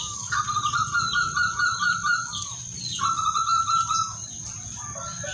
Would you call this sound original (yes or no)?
yes